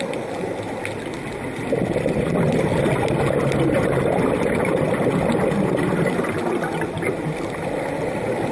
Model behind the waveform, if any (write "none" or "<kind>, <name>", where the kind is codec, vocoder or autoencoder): none